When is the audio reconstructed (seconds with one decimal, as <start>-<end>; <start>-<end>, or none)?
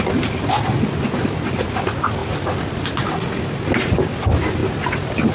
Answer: 2.2-2.8; 4.6-5.3